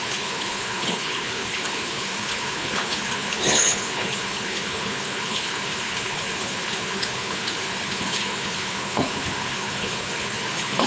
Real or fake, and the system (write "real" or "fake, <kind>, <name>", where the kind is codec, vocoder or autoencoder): fake, codec, HILCodec